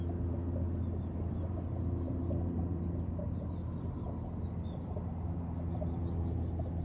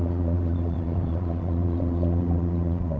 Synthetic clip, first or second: second